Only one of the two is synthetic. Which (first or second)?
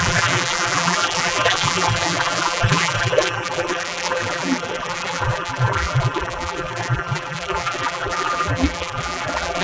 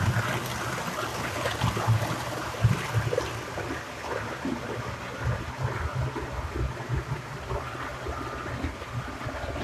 first